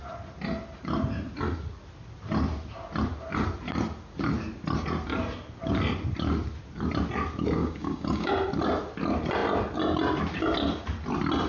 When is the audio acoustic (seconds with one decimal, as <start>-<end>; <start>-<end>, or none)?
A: 0.0-7.6; 8.3-11.5